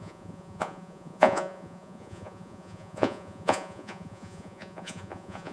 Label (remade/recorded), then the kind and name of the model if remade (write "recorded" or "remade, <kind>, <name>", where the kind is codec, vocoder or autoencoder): remade, vocoder, Vocos